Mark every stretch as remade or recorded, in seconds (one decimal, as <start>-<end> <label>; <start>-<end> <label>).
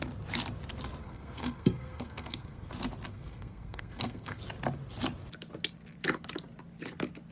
0.0-1.0 recorded; 1.0-2.7 remade; 2.7-3.1 recorded; 3.1-4.4 remade; 4.4-7.3 recorded